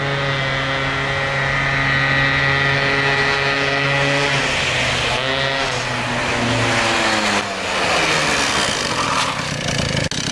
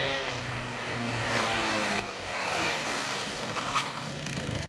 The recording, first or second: first